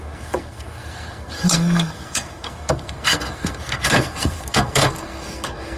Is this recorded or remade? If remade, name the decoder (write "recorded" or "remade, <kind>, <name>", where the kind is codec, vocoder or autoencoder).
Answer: remade, codec, SNAC